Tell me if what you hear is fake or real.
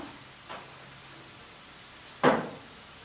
real